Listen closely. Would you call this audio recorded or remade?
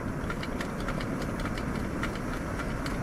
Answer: recorded